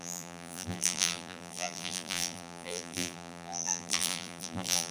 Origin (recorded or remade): remade